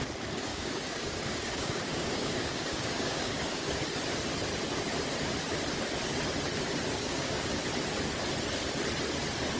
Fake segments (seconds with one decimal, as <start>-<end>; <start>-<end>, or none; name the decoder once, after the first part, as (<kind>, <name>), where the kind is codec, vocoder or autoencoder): 0.5-3.8 (codec, DAC); 6.9-7.6